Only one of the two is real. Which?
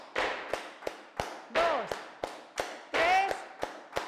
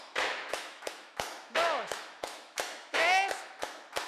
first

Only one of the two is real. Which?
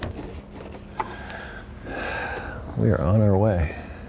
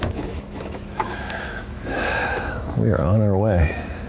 first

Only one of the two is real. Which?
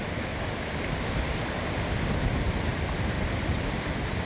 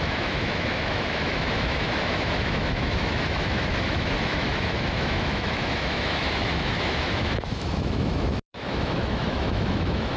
first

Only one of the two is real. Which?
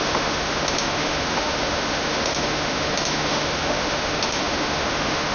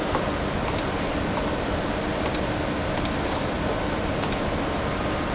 second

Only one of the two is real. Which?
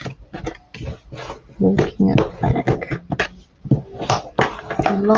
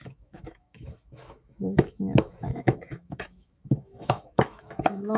first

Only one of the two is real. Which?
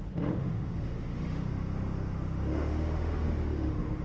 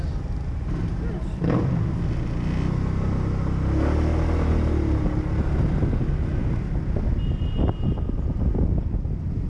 second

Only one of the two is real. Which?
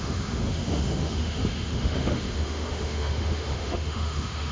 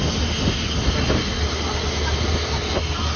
second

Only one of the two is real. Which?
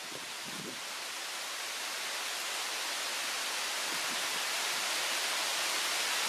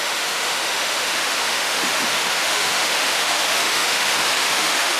first